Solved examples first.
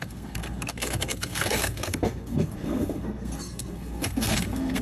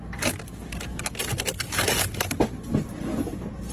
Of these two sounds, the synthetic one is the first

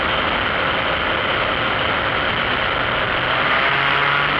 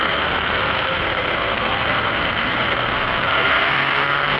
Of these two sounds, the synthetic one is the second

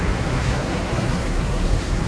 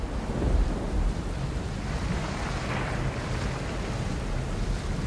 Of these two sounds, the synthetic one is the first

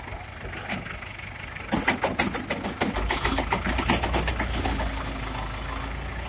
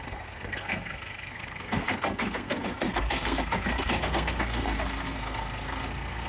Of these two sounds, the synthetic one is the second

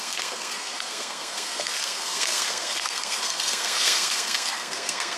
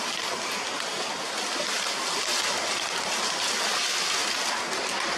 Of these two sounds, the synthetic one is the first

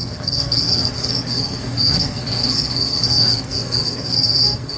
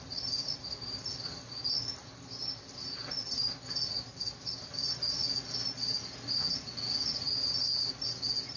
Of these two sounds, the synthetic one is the first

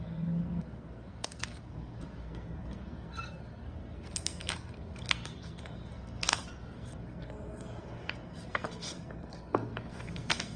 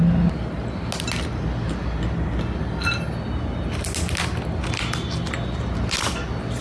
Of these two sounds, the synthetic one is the first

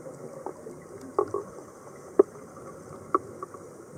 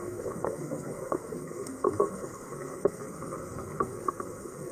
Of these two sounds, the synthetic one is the second